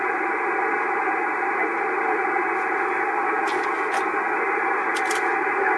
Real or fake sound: real